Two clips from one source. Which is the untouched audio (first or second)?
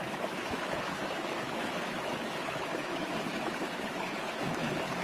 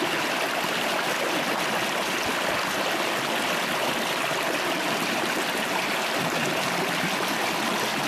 second